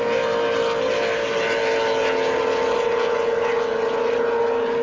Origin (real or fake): real